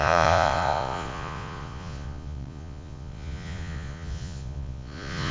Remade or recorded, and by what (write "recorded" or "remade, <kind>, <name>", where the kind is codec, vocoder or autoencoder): remade, vocoder, Vocos